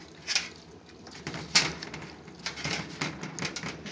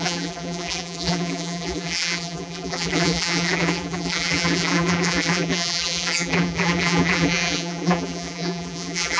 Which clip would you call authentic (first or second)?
first